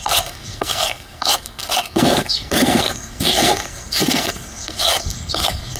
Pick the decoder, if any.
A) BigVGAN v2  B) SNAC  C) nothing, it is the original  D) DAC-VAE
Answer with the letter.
B